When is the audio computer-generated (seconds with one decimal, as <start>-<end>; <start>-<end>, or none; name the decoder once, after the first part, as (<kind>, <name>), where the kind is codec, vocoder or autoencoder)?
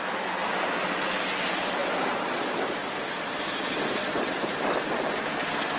none